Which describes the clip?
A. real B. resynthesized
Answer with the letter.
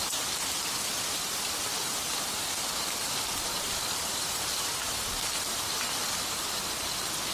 A